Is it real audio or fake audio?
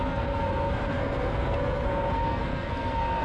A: fake